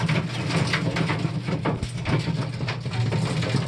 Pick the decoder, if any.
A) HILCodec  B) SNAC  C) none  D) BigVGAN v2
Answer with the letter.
C